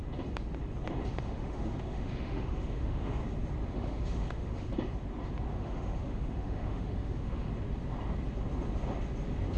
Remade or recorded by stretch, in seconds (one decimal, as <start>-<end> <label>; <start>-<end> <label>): 0.0-1.1 recorded; 1.1-3.2 remade; 3.2-3.7 recorded; 3.7-4.7 remade; 4.7-5.5 recorded; 5.5-7.5 remade; 7.5-9.6 recorded